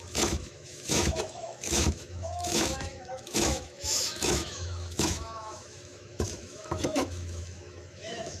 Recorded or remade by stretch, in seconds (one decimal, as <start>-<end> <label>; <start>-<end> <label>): 0.0-8.4 remade